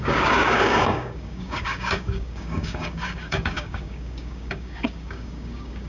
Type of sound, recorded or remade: remade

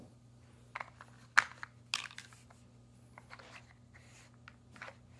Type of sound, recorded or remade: recorded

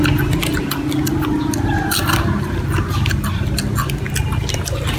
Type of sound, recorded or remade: recorded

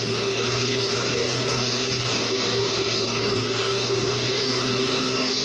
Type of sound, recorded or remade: remade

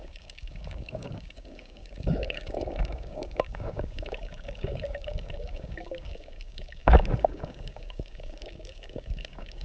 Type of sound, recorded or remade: remade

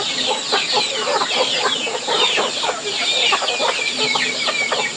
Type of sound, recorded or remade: recorded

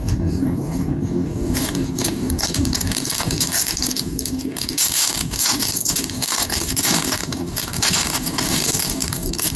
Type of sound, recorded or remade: remade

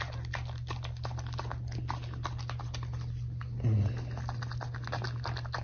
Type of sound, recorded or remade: recorded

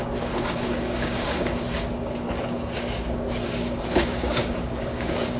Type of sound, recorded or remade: remade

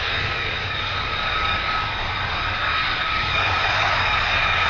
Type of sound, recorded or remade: remade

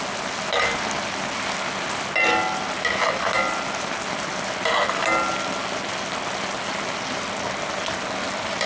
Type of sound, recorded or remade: recorded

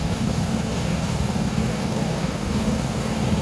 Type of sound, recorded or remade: remade